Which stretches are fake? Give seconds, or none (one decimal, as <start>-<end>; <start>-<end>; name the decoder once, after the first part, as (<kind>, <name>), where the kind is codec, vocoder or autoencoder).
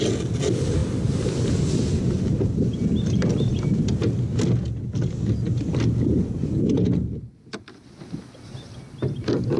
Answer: none